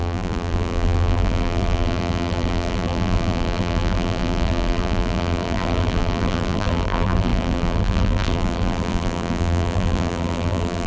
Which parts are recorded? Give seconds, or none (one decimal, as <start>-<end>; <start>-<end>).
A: none